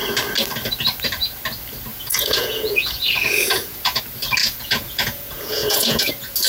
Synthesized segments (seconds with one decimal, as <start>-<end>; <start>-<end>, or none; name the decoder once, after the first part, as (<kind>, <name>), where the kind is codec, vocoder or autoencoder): 1.9-4.0 (vocoder, Vocos); 4.4-6.1